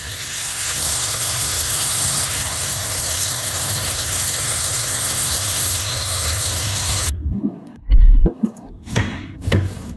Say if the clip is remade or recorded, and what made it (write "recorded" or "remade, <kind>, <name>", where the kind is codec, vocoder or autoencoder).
remade, codec, SNAC